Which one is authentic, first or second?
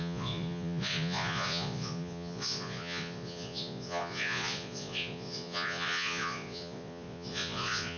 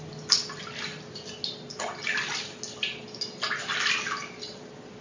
second